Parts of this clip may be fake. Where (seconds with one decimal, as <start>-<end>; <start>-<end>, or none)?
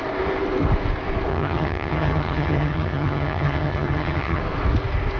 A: 1.3-4.4